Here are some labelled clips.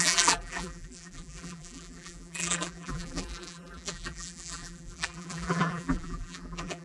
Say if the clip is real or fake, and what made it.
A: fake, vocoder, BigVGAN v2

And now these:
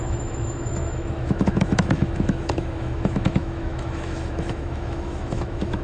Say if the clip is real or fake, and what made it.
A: fake, autoencoder, DAC-VAE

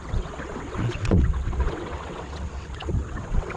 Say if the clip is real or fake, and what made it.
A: fake, vocoder, WaveNeXt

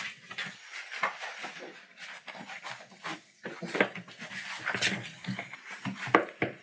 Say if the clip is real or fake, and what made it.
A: real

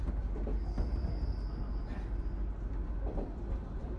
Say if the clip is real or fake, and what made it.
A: real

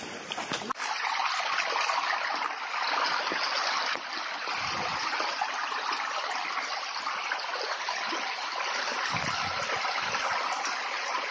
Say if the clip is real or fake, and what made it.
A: real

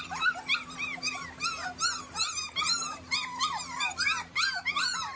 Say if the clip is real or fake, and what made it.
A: fake, vocoder, BigVGAN v2